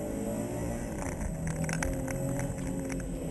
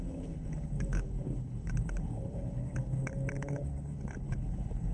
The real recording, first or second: first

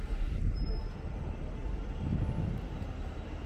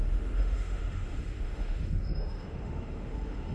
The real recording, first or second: first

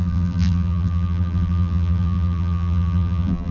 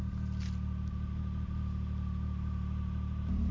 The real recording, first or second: second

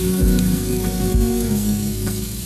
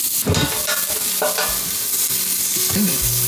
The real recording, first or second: second